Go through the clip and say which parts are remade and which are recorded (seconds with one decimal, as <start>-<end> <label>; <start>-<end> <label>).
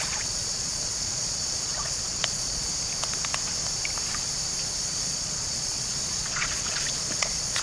0.0-2.7 remade; 2.7-4.8 recorded; 4.8-7.6 remade